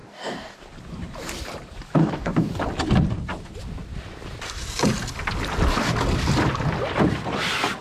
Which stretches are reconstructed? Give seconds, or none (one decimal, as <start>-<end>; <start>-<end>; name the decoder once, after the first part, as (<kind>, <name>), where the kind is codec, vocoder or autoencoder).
0.0-0.6 (codec, DAC); 2.0-2.5

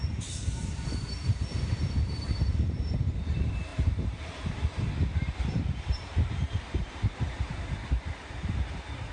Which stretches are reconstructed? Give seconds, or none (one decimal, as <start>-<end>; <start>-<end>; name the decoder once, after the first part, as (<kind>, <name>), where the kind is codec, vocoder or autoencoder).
0.0-9.1 (vocoder, BigVGAN v2)

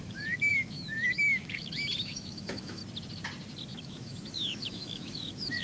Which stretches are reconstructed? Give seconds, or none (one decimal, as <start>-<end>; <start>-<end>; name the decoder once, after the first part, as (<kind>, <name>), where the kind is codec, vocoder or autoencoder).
0.0-2.8 (autoencoder, DAC-VAE); 3.8-5.6

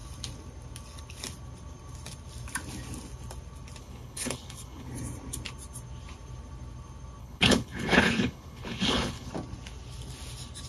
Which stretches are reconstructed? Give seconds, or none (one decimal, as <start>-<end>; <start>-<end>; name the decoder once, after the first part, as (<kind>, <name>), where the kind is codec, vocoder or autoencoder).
3.8-4.9 (codec, HILCodec); 7.2-9.3